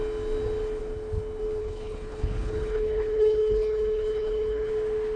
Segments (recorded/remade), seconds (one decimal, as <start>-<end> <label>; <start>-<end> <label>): 0.0-1.6 recorded; 1.6-4.7 remade; 4.7-5.2 recorded